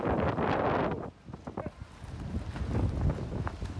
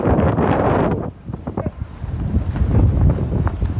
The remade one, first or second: second